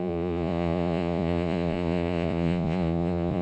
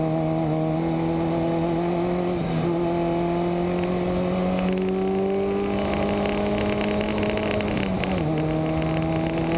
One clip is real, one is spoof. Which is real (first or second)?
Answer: second